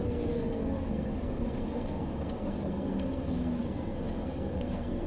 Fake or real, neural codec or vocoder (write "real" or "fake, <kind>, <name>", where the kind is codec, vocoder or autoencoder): fake, codec, SNAC